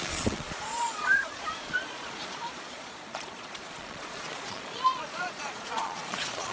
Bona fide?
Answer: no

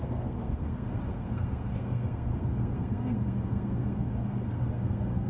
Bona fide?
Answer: no